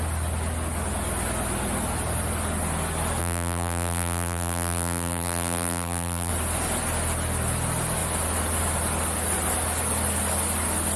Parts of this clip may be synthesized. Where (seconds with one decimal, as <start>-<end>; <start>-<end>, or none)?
3.2-6.3